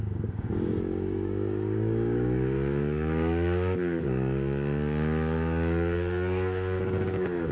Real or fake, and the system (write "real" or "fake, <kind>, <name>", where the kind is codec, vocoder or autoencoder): fake, codec, DAC